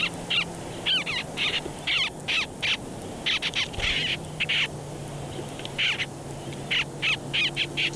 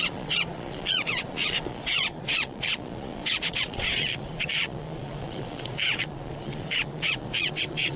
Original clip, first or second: first